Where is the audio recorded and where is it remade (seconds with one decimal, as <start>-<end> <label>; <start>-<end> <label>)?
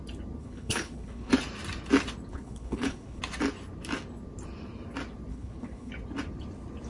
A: 0.0-0.4 recorded; 0.4-1.3 remade; 1.3-2.3 recorded; 2.3-3.2 remade; 3.2-5.3 recorded; 5.3-5.9 remade; 5.9-6.9 recorded